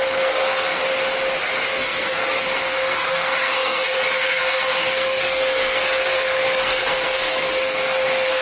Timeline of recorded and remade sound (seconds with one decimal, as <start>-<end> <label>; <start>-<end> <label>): 0.0-0.8 remade; 0.8-1.7 recorded; 1.7-8.4 remade

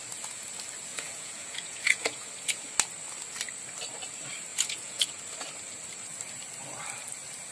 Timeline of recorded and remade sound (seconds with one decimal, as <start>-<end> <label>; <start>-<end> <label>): 0.0-0.9 recorded; 0.9-2.7 remade; 2.7-4.5 recorded; 4.5-5.1 remade; 5.1-7.5 recorded

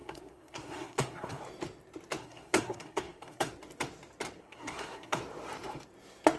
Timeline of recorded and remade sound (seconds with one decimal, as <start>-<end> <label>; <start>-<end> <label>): 0.0-1.4 remade; 1.4-2.2 recorded; 2.2-3.5 remade; 3.5-4.4 recorded; 4.4-5.2 remade; 5.2-6.4 recorded

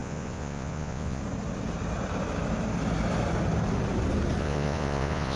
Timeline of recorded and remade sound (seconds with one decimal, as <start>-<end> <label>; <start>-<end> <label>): 0.0-1.2 remade; 1.2-4.4 recorded; 4.4-5.4 remade

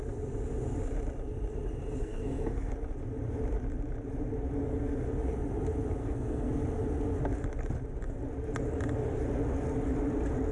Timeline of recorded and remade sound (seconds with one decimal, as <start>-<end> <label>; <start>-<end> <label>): 0.0-2.0 recorded; 2.0-2.7 remade; 2.7-6.0 recorded; 6.0-6.5 remade; 6.5-10.5 recorded

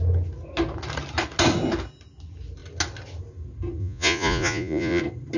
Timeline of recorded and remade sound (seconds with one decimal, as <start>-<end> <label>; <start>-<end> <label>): 0.0-3.8 recorded; 3.8-5.0 remade; 5.0-5.4 recorded

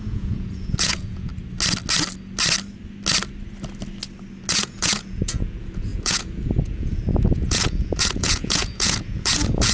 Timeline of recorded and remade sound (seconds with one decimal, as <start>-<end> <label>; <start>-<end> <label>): 0.0-1.3 remade; 1.3-4.5 recorded; 4.5-9.7 remade

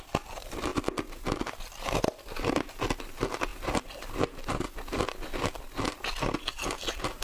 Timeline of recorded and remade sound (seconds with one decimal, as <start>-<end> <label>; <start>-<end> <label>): 0.0-7.2 recorded